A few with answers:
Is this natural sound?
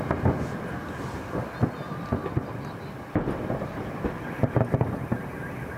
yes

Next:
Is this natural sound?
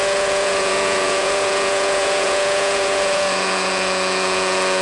no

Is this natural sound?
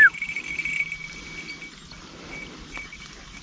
yes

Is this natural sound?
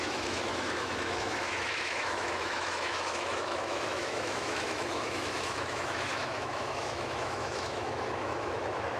no